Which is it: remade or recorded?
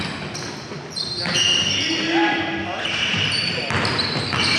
recorded